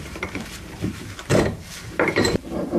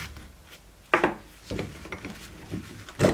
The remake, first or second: first